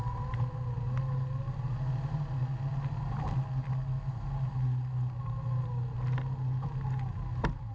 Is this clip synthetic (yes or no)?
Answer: no